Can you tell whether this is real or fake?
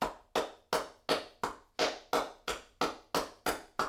real